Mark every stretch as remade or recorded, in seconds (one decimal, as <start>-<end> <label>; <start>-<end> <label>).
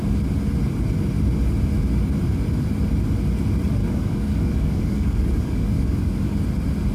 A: 0.0-3.8 recorded; 3.8-6.3 remade; 6.3-6.9 recorded